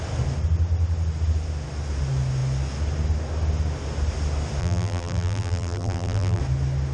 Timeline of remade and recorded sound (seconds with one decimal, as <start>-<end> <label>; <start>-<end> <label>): 0.0-4.6 recorded; 4.6-6.4 remade; 6.4-6.9 recorded